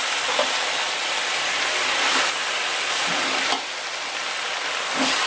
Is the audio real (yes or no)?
no